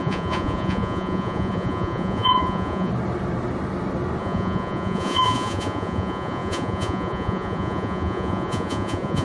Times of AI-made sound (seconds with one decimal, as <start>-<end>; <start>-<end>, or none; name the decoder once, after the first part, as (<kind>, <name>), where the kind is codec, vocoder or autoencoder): 0.0-2.9 (vocoder, Vocos); 4.2-9.2